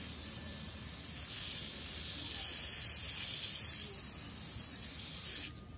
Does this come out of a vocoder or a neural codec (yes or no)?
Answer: no